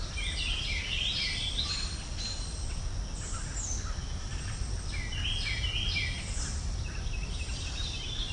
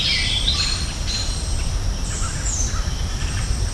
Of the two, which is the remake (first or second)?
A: second